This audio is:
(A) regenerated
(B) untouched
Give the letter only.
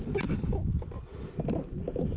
B